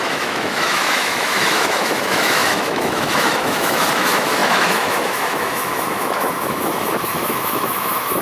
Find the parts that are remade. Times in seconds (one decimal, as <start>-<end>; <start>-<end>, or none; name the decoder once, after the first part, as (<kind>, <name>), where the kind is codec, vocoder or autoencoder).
0.0-8.2 (autoencoder, DAC-VAE)